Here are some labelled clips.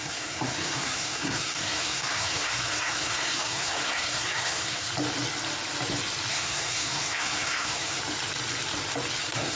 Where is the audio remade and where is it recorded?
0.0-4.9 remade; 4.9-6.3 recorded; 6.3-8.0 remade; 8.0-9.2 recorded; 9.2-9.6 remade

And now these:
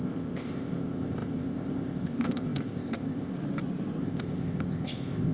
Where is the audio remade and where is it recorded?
0.0-3.3 remade; 3.3-4.0 recorded; 4.0-5.3 remade

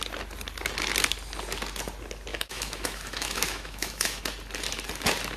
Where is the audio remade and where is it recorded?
0.0-2.3 recorded; 2.3-4.2 remade; 4.2-5.4 recorded

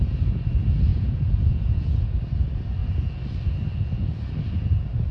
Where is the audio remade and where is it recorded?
0.0-0.9 recorded; 0.9-2.2 remade; 2.2-5.1 recorded

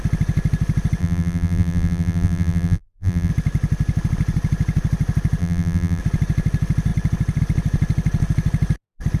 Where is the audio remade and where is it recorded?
0.0-1.0 recorded; 1.0-3.3 remade; 3.3-5.4 recorded; 5.4-6.0 remade; 6.0-9.2 recorded

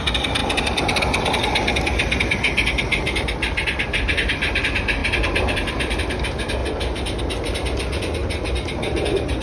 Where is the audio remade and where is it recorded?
0.0-0.4 recorded; 0.4-1.0 remade; 1.0-5.0 recorded; 5.0-5.9 remade; 5.9-6.6 recorded; 6.6-7.2 remade; 7.2-9.4 recorded

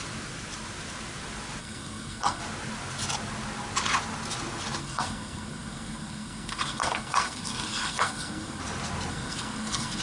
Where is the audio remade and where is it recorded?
0.0-1.6 recorded; 1.6-2.4 remade; 2.4-4.8 recorded; 4.8-8.6 remade; 8.6-9.1 recorded; 9.1-10.0 remade

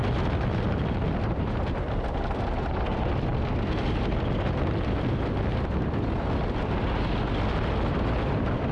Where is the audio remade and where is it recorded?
0.0-8.7 recorded